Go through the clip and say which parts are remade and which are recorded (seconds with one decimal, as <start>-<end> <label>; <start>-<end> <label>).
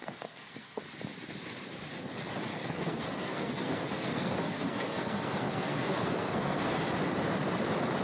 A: 0.0-0.8 remade; 0.8-2.5 recorded; 2.5-6.8 remade; 6.8-8.0 recorded